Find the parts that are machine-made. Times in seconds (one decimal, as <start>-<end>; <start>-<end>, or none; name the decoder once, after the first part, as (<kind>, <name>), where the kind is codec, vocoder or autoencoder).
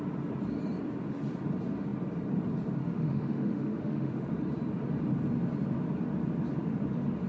2.8-4.3 (autoencoder, DAC-VAE)